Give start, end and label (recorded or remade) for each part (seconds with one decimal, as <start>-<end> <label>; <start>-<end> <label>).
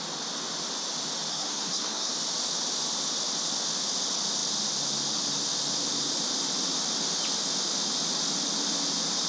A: 0.0-1.3 recorded; 1.3-2.1 remade; 2.1-9.3 recorded